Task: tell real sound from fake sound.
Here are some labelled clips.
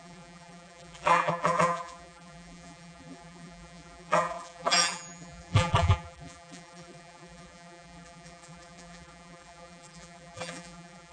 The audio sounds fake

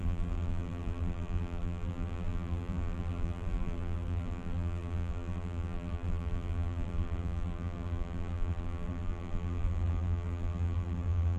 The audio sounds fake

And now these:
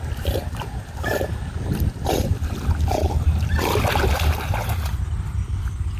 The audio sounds real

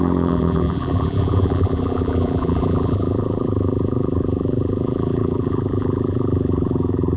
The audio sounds fake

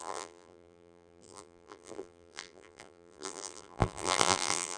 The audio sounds fake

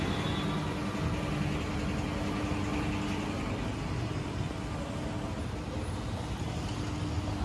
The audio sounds real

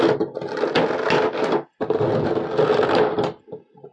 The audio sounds real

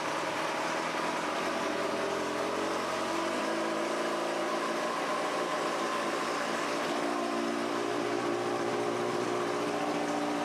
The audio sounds real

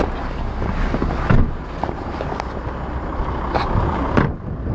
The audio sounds real